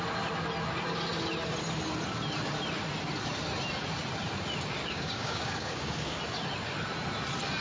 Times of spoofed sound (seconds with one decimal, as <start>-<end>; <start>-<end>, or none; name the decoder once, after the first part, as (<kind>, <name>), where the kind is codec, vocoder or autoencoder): 4.8-6.2 (codec, DAC)